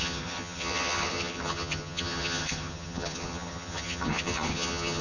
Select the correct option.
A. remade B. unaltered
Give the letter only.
A